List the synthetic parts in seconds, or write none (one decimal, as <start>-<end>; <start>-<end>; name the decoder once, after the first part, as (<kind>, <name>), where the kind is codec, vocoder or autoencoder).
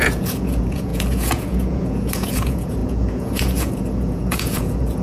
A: 0.0-5.0 (vocoder, Vocos)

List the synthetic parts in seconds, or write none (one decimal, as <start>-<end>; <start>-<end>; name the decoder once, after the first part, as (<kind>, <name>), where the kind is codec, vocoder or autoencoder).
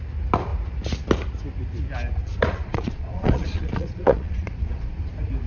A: 2.2-5.1 (vocoder, Vocos)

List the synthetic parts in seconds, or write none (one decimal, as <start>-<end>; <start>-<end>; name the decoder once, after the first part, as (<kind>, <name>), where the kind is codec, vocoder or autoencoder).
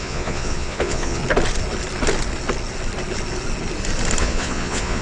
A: 0.0-1.2 (vocoder, Vocos); 4.2-5.0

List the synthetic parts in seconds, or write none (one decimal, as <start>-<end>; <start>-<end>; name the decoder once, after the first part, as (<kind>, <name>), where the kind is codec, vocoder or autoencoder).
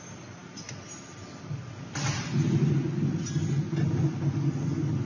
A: none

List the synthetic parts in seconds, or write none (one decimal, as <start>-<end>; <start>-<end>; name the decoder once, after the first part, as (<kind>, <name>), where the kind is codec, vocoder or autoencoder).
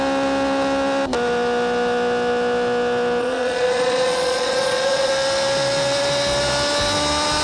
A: 3.2-5.1 (vocoder, Vocos)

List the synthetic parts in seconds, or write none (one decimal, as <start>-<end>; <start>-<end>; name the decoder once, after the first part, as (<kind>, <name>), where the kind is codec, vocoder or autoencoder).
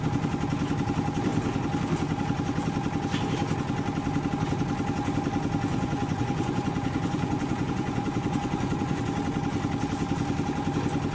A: 5.7-9.0 (vocoder, Vocos)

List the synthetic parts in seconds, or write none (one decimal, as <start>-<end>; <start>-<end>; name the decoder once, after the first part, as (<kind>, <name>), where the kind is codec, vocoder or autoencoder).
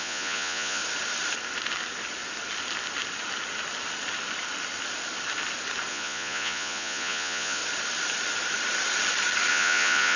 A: 0.0-0.8 (vocoder, Vocos); 5.9-7.6; 9.5-10.2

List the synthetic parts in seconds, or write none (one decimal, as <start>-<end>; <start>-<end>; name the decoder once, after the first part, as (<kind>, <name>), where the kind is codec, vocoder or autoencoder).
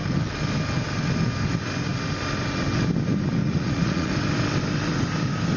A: 3.4-4.1 (vocoder, Vocos)